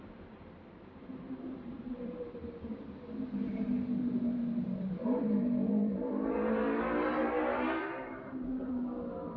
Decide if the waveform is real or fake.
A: fake